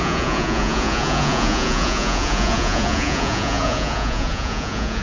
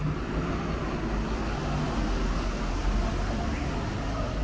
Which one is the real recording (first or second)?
second